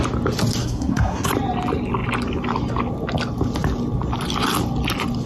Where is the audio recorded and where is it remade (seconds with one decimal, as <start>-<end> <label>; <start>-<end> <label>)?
0.0-0.6 recorded; 0.6-1.3 remade; 1.3-5.3 recorded